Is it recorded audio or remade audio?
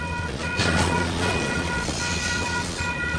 remade